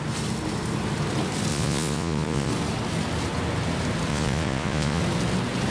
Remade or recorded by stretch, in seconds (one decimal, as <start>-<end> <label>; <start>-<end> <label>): 0.0-1.5 recorded; 1.5-2.5 remade; 2.5-4.1 recorded; 4.1-5.0 remade; 5.0-5.7 recorded